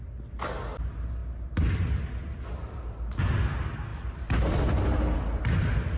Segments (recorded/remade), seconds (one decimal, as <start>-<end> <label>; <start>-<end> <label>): 0.0-6.0 recorded